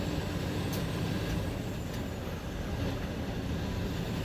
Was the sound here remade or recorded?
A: recorded